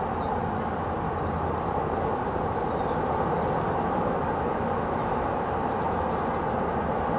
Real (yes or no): yes